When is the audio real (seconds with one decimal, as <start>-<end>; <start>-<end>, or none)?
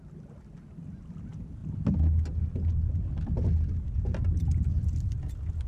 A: 0.0-5.7